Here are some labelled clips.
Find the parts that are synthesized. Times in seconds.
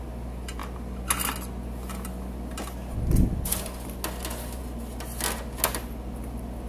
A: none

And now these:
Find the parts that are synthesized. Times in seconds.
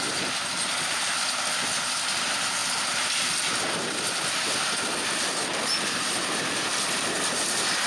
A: 2.6-7.3 (vocoder, BigVGAN v2)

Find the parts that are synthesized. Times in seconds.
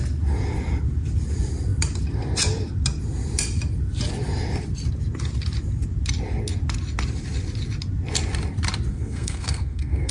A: 8.9-10.1 (codec, SNAC)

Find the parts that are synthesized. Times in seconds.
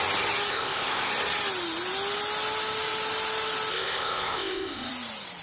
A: 0.5-1.1 (codec, ZipCodec); 3.7-4.9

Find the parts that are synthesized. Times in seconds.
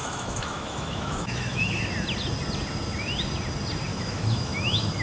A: 0.0-1.8 (autoencoder, DAC-VAE); 3.9-5.0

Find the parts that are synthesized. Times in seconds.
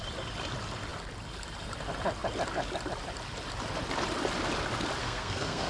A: 5.0-5.7 (codec, SNAC)